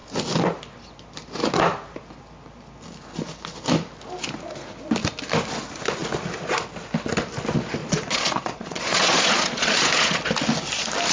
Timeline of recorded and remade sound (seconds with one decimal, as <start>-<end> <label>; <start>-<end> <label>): 0.0-7.8 recorded; 7.8-10.2 remade; 10.2-11.1 recorded